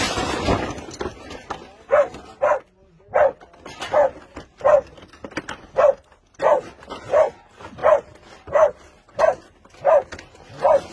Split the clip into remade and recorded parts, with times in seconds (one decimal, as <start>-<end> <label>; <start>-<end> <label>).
0.0-7.8 recorded; 7.8-9.2 remade; 9.2-10.9 recorded